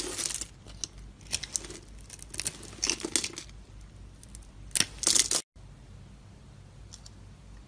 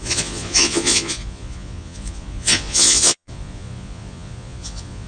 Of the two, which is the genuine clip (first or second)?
first